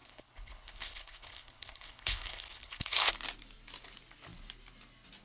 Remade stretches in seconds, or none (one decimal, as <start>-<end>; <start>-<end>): 0.0-3.1